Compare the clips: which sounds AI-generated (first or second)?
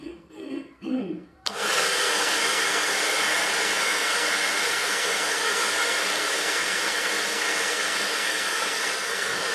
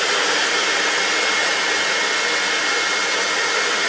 first